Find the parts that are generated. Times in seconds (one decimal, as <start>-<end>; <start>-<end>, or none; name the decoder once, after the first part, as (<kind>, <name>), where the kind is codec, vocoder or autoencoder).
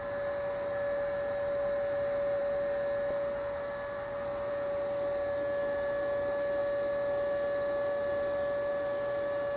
none